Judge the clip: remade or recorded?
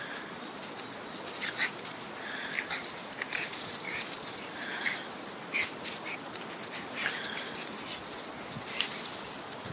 recorded